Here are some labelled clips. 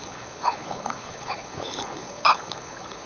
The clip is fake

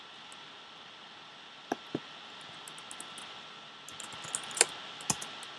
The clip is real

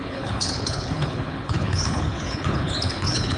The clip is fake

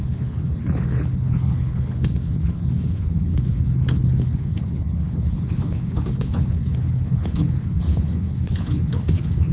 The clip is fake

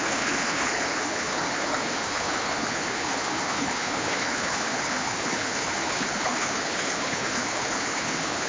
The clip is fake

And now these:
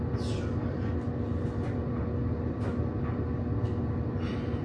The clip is real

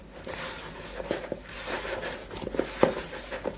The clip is real